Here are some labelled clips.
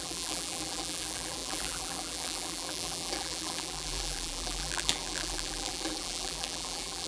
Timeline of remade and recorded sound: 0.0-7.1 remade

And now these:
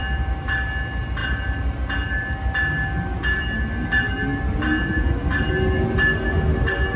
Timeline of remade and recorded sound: 0.0-7.0 recorded

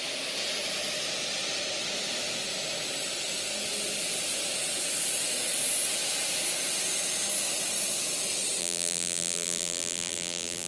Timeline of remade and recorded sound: 0.0-8.6 recorded; 8.6-10.7 remade